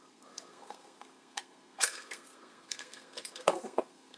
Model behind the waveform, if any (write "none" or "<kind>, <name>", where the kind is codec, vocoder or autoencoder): codec, SNAC